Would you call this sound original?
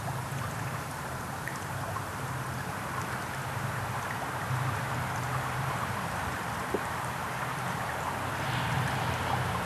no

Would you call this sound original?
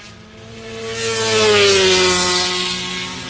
yes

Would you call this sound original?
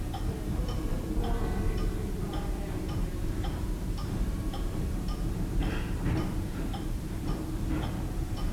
no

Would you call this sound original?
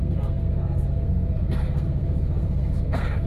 no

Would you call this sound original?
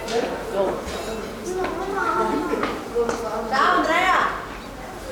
yes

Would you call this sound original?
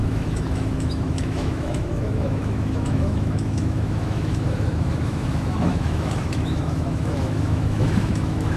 no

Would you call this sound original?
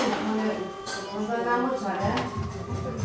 yes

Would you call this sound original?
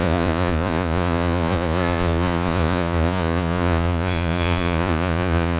no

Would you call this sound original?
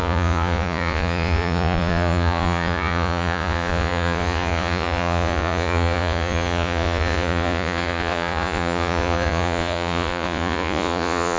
no